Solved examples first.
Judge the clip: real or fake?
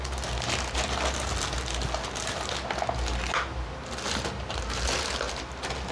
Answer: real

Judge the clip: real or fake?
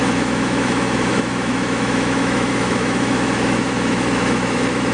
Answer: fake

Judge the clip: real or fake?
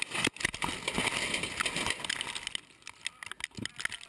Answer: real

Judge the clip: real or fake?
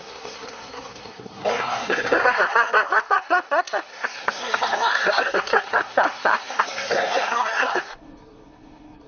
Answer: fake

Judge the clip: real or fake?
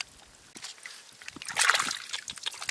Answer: real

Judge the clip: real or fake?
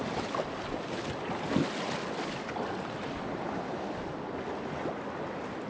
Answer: real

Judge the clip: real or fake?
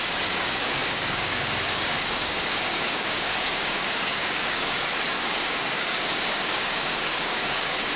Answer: fake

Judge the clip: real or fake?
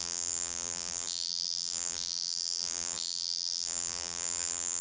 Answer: fake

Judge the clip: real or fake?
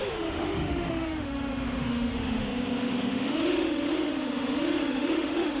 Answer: fake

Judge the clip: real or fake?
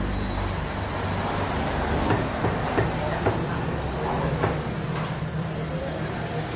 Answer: real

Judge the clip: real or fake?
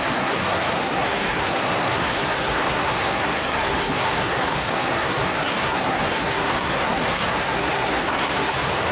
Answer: fake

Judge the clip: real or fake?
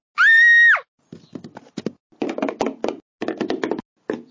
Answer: real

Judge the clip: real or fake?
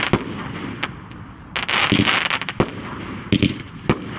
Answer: real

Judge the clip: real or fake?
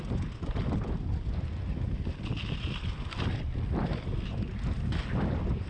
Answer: real